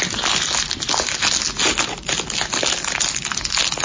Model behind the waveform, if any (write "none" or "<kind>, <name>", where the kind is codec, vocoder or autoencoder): none